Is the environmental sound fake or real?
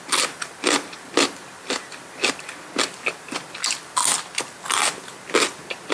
real